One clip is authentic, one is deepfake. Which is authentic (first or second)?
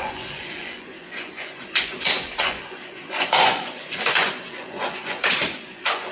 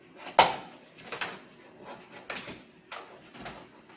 second